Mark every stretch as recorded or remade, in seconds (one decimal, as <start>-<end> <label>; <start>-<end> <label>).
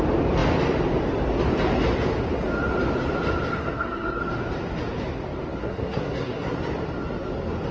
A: 0.0-3.5 recorded; 3.5-4.2 remade; 4.2-5.6 recorded; 5.6-6.6 remade; 6.6-7.7 recorded